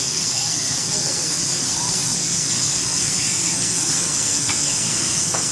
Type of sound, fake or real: fake